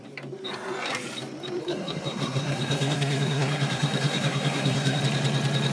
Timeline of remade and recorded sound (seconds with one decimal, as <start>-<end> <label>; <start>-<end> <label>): 0.0-1.6 recorded; 1.6-5.0 remade; 5.0-5.7 recorded